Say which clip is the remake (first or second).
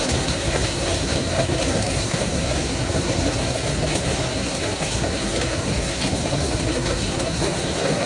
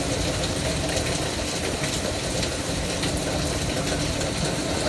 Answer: first